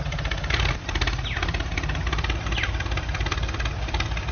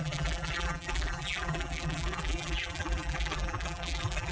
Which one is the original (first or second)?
first